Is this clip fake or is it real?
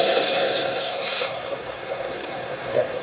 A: fake